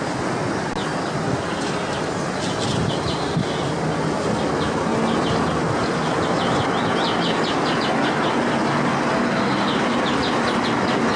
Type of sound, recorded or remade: recorded